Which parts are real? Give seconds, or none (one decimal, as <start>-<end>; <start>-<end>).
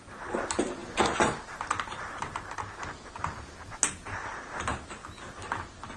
0.0-6.0